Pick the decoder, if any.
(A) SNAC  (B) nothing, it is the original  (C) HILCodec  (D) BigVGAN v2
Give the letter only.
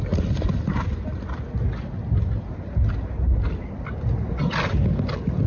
B